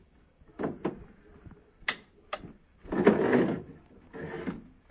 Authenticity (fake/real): real